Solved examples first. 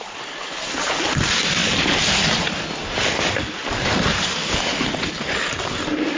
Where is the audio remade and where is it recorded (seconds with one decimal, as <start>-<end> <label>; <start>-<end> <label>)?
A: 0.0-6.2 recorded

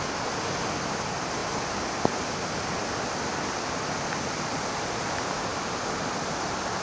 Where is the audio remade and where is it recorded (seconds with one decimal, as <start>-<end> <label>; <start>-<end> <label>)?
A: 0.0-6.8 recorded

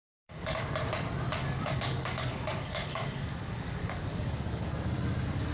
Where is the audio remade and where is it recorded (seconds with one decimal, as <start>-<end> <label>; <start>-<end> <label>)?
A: 0.0-0.6 remade; 0.6-1.4 recorded; 1.4-4.7 remade; 4.7-5.5 recorded

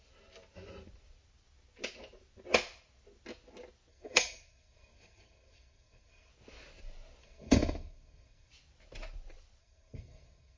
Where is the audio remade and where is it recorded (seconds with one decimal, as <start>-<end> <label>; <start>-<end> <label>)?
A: 0.0-3.9 recorded; 3.9-6.3 remade; 6.3-7.2 recorded; 7.2-8.5 remade; 8.5-9.6 recorded; 9.6-10.6 remade

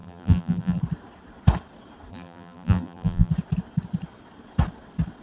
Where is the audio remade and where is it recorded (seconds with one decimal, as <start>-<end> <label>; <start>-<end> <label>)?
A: 0.0-0.8 remade; 0.8-2.1 recorded; 2.1-3.3 remade; 3.3-5.2 recorded

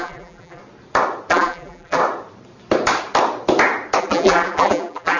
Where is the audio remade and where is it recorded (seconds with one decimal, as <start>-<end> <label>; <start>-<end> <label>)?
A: 0.0-0.6 remade; 0.6-1.3 recorded; 1.3-2.0 remade; 2.0-4.0 recorded; 4.0-5.2 remade

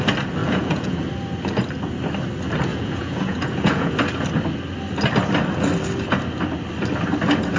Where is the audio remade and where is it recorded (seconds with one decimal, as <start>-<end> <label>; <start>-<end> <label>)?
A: 0.0-0.4 recorded; 0.4-1.0 remade; 1.0-2.7 recorded; 2.7-3.9 remade; 3.9-7.6 recorded

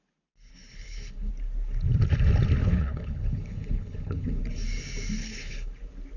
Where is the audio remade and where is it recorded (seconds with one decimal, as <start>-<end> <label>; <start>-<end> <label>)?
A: 0.0-0.5 recorded; 0.5-1.3 remade; 1.3-2.6 recorded; 2.6-4.4 remade; 4.4-5.2 recorded; 5.2-5.7 remade; 5.7-6.2 recorded